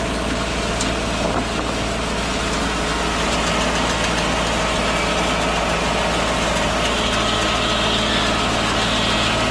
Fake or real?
real